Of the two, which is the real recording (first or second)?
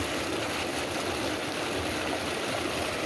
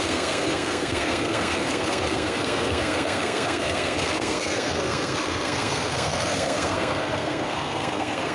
first